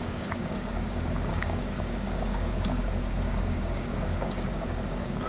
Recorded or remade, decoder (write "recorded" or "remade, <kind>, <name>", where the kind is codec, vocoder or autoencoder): remade, codec, DAC